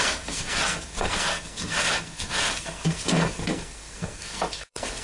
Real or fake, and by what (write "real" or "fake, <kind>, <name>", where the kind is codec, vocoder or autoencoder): fake, codec, SNAC